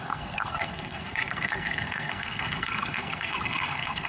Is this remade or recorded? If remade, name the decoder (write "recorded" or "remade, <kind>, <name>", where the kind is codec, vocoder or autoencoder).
remade, codec, SNAC